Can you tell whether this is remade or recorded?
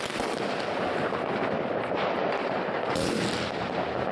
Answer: recorded